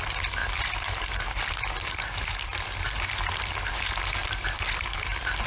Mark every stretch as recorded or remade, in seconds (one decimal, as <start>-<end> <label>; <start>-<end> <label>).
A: 0.0-0.4 recorded; 0.4-3.7 remade; 3.7-4.2 recorded; 4.2-5.5 remade